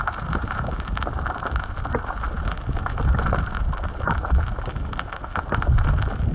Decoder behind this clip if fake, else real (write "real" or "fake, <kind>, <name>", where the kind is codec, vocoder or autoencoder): real